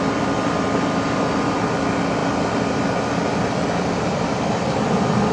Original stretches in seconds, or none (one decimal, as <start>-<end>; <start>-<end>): 0.0-5.3